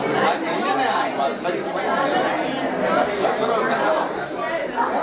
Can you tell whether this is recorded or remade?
recorded